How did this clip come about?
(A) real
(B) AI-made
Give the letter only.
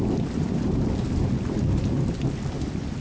A